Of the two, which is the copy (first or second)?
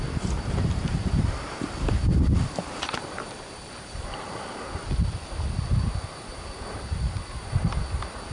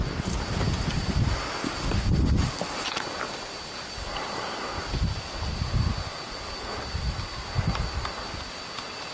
first